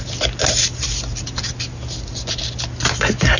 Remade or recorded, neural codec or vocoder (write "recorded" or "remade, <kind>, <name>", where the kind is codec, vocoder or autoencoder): recorded